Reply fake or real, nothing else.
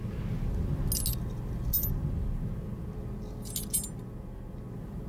real